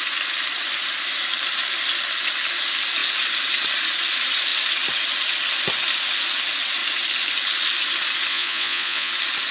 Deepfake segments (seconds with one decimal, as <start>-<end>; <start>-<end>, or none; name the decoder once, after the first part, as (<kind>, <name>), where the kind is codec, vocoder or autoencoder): 8.3-9.1 (vocoder, Vocos)